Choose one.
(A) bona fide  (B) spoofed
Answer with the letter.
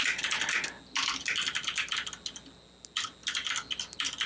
A